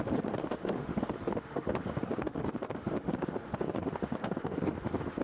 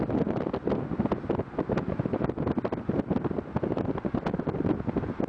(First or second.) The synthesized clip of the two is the first